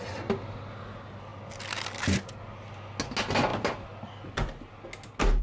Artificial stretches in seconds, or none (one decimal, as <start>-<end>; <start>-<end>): none